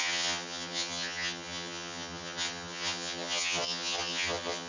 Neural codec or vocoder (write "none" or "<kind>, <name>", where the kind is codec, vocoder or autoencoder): vocoder, HiFi-GAN